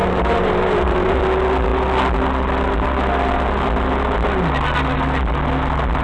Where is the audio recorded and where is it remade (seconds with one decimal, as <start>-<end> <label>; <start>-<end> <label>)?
0.0-1.2 remade; 1.2-6.0 recorded